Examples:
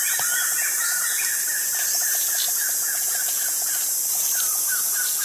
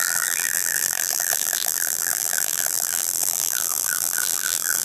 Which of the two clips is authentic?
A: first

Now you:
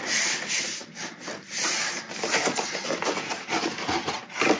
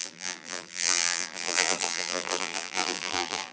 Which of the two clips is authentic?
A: first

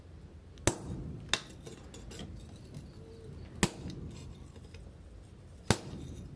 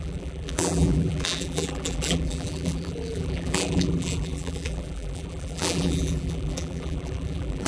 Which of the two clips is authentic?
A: first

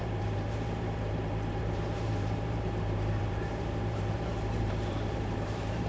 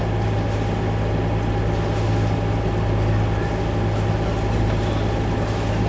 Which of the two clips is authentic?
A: second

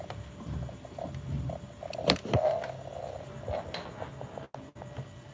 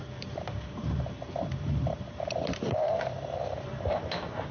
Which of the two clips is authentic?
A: first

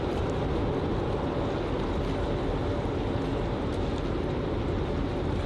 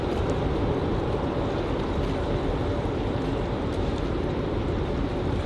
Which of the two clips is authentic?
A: first